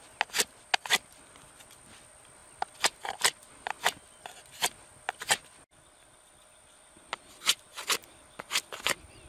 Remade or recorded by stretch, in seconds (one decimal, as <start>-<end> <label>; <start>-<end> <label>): 0.0-9.3 recorded